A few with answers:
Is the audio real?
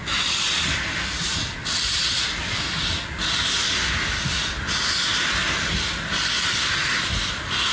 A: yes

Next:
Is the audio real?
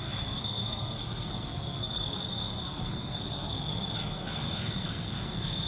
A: no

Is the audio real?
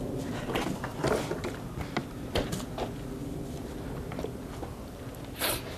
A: yes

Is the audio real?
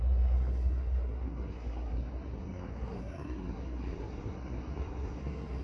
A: no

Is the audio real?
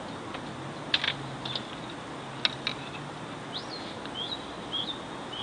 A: yes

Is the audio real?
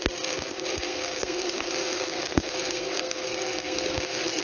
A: no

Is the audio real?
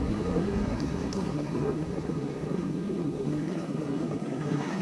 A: no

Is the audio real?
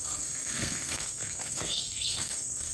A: no